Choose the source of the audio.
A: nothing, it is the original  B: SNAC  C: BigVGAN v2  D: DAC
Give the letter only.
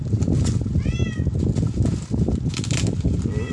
A